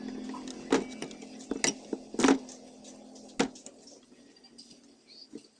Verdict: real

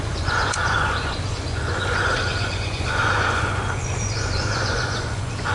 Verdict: fake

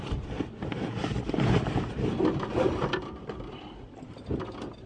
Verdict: real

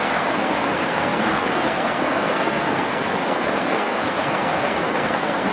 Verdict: fake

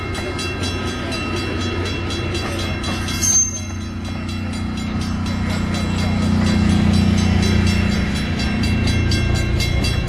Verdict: real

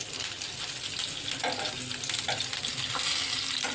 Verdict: real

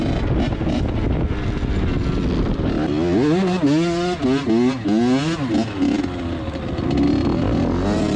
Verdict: real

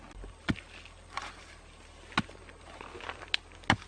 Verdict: real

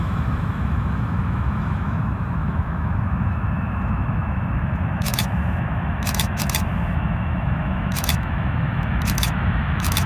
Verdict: fake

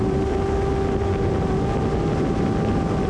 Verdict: real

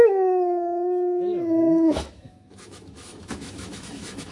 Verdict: fake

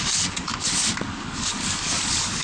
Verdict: fake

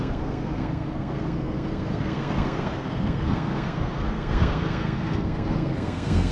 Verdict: fake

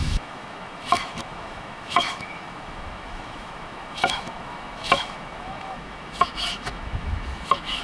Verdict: fake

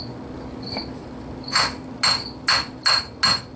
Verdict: real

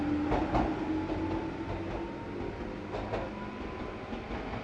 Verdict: real